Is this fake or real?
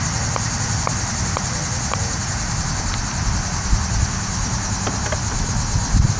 real